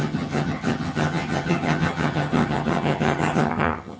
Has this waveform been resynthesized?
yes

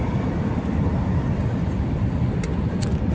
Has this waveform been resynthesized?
no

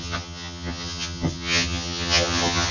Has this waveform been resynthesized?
yes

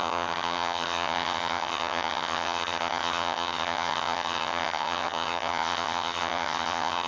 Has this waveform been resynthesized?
yes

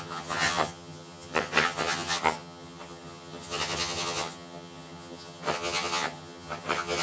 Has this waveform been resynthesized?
yes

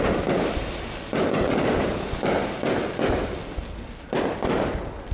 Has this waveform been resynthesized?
no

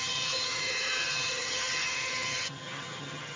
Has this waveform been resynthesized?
yes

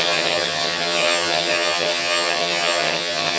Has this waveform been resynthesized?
yes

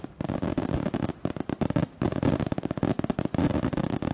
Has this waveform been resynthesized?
no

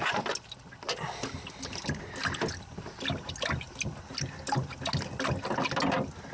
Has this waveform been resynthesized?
no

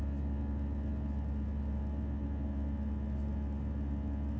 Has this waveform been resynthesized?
no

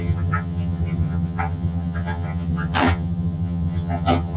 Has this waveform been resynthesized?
yes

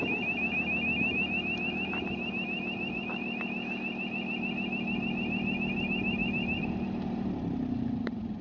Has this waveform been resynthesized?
no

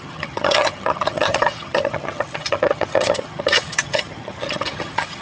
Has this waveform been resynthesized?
yes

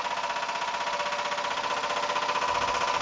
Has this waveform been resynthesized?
no